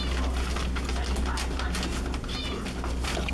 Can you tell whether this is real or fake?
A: real